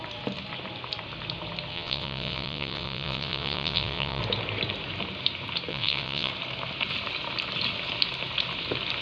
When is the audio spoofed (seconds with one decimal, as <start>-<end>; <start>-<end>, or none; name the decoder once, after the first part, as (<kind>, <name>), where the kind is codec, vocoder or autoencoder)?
1.7-4.2 (vocoder, WaveNeXt); 5.7-6.3